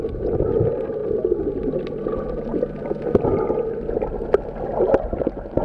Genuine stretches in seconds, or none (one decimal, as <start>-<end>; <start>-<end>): 0.0-5.6